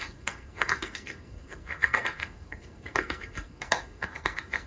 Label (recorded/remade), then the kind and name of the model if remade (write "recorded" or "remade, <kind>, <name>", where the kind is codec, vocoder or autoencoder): remade, codec, SNAC